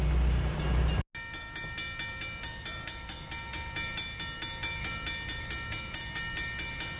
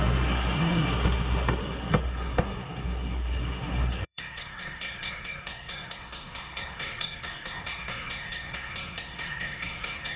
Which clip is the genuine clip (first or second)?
first